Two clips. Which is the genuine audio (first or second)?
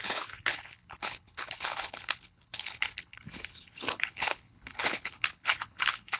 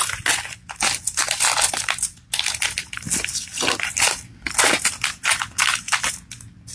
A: second